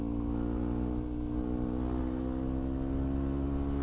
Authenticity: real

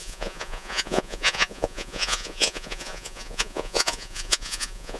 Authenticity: fake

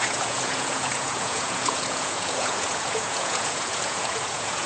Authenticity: fake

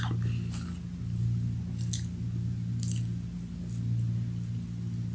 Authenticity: real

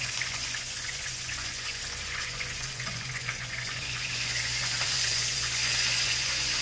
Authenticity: fake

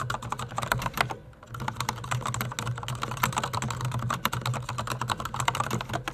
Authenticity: real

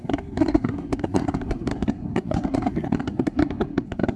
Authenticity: fake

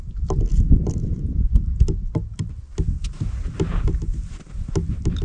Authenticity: real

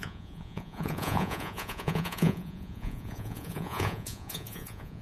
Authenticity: fake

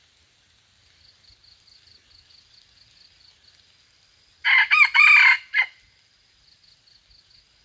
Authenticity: real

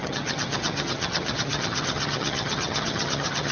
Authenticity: fake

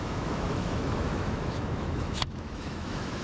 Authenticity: fake